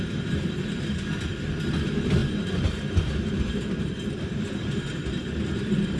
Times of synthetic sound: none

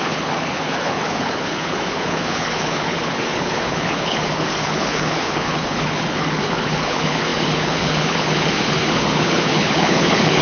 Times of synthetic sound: 0.0-10.4 (codec, HILCodec)

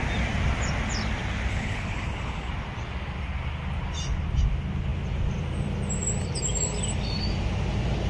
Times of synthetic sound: 1.5-2.5 (codec, HILCodec)

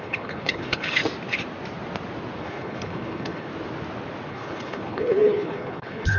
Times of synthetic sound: 0.0-1.0 (codec, HILCodec); 2.4-3.5; 4.3-6.2

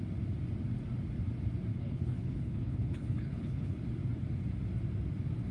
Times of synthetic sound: 1.7-3.8 (codec, HILCodec)

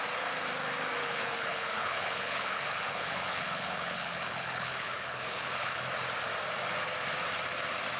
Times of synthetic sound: 1.0-5.8 (codec, HILCodec)

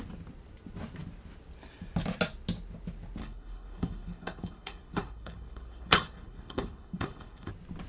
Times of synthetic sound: 3.2-7.5 (codec, HILCodec)

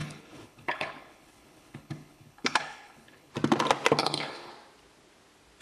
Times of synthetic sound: 0.0-3.3 (codec, HILCodec); 4.0-4.5